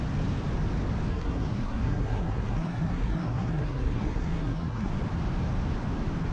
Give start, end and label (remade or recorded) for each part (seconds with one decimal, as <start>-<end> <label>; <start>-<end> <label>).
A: 0.0-1.1 recorded; 1.1-4.9 remade; 4.9-6.3 recorded